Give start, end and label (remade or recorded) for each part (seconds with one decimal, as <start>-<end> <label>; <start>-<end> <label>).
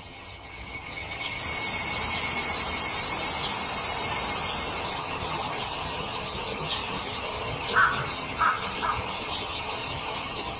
0.0-1.4 remade; 1.4-4.8 recorded; 4.8-10.6 remade